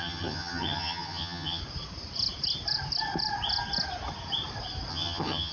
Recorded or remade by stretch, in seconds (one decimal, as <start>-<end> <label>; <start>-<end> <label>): 0.0-1.6 remade; 1.6-4.9 recorded; 4.9-5.5 remade